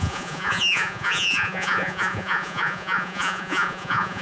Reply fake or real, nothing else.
fake